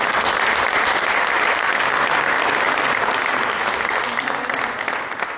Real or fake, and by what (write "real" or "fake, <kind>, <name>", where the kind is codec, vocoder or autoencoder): real